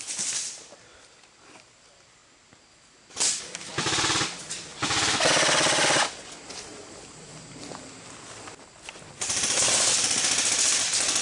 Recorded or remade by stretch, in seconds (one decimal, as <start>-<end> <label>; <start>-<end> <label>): 0.0-2.2 remade; 2.2-3.4 recorded; 3.4-4.7 remade; 4.7-5.3 recorded; 5.3-7.3 remade; 7.3-9.6 recorded; 9.6-11.2 remade